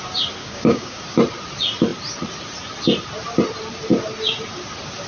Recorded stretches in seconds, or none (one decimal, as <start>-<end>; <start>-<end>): 0.0-0.4; 1.0-5.1